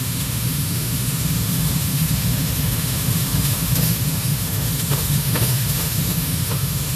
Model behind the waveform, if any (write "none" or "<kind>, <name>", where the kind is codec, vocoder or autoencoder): autoencoder, DAC-VAE